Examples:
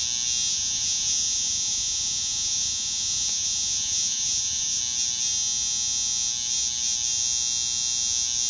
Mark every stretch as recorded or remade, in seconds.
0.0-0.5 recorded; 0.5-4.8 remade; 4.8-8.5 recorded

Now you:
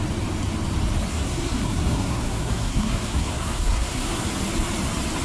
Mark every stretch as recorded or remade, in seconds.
0.0-1.1 recorded; 1.1-4.2 remade; 4.2-5.2 recorded

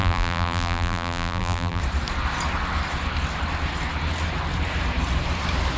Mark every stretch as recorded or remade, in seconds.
0.0-1.8 remade; 1.8-5.8 recorded

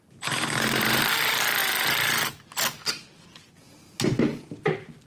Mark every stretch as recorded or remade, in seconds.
0.0-5.1 recorded